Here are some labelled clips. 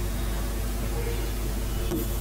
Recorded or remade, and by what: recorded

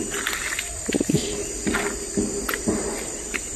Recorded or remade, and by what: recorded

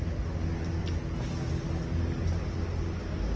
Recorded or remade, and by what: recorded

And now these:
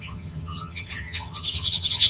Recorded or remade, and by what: remade, vocoder, HiFi-GAN